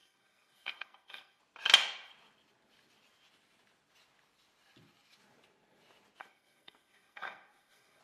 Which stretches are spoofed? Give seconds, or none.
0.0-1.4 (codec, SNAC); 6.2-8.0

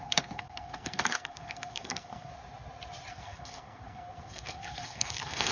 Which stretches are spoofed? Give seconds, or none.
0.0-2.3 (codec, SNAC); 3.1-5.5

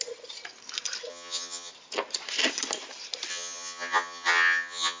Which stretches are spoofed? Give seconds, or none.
1.1-1.7 (vocoder, HiFi-GAN); 3.3-5.0